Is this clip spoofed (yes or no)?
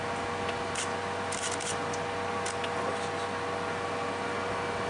no